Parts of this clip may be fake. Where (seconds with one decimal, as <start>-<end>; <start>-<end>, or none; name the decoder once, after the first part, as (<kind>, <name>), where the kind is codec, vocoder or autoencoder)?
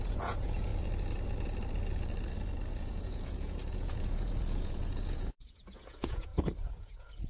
0.0-0.7 (vocoder, Vocos); 2.7-7.3